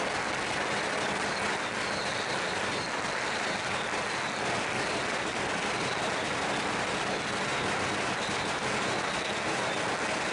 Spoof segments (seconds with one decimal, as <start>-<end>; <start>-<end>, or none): none